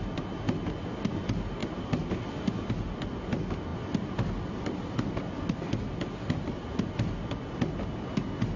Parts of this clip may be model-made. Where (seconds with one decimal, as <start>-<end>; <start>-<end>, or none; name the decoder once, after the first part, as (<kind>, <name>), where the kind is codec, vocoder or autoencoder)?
none